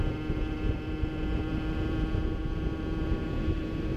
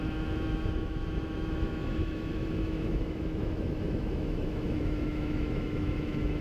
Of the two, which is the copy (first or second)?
second